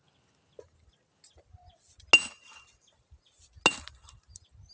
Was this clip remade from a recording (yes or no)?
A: no